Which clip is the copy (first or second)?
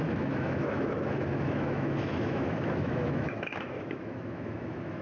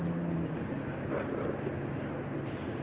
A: first